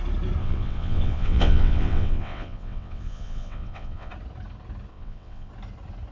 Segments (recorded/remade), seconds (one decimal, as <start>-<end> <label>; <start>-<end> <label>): 0.0-0.4 recorded; 0.4-4.1 remade; 4.1-4.9 recorded; 4.9-5.5 remade; 5.5-6.1 recorded